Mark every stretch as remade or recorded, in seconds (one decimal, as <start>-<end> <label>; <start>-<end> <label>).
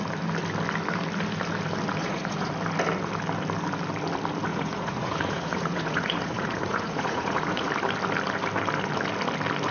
0.0-2.0 recorded; 2.0-2.5 remade; 2.5-4.5 recorded; 4.5-7.7 remade; 7.7-9.7 recorded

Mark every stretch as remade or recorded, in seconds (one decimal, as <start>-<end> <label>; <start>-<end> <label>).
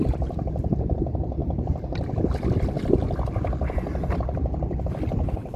0.0-5.6 recorded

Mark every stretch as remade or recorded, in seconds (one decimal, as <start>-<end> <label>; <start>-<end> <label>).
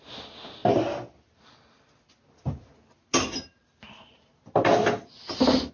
0.0-5.7 recorded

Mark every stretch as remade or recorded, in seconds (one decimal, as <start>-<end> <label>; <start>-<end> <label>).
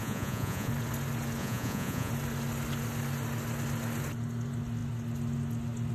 0.0-0.7 remade; 0.7-1.4 recorded; 1.4-2.1 remade; 2.1-5.9 recorded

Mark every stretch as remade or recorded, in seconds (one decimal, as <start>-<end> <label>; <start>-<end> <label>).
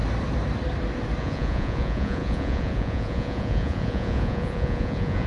0.0-1.2 recorded; 1.2-5.3 remade